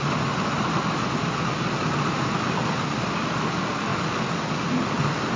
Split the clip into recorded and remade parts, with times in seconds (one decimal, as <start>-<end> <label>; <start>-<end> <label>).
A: 0.0-5.4 recorded